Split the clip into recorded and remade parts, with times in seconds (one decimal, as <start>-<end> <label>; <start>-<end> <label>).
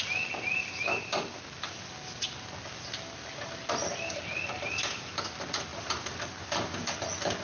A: 0.0-4.3 recorded; 4.3-5.2 remade; 5.2-5.7 recorded; 5.7-6.2 remade; 6.2-7.4 recorded